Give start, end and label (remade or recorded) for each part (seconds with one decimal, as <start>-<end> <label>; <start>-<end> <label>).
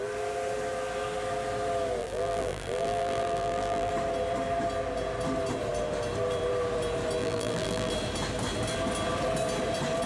0.0-2.0 recorded; 2.0-3.9 remade; 3.9-7.2 recorded; 7.2-7.9 remade; 7.9-10.1 recorded